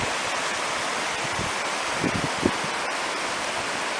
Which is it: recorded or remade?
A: recorded